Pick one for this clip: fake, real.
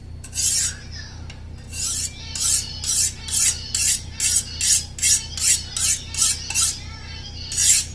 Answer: real